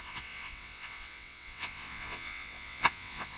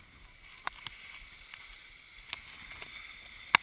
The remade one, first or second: first